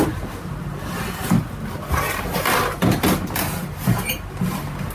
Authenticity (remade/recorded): recorded